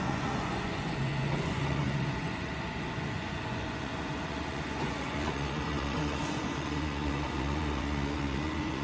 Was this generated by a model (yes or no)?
yes